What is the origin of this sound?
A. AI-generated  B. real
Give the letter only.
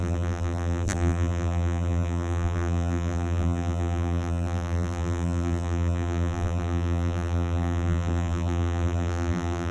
A